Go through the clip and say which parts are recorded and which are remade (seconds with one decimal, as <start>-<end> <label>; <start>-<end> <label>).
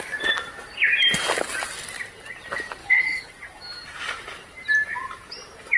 0.0-2.8 recorded; 2.8-3.3 remade; 3.3-5.8 recorded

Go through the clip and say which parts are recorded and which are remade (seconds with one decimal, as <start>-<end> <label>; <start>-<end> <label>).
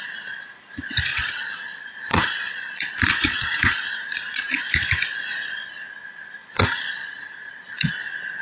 0.0-1.1 recorded; 1.1-4.6 remade; 4.6-6.4 recorded; 6.4-7.9 remade; 7.9-8.4 recorded